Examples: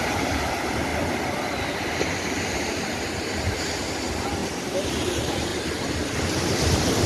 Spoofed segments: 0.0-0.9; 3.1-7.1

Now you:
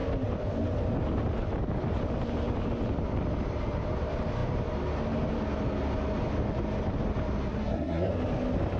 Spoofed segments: 7.5-8.1

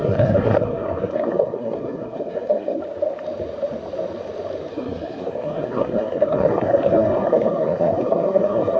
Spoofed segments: 0.0-2.8; 4.7-8.8

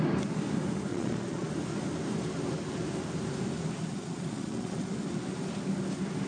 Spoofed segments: 0.9-1.5; 3.9-4.9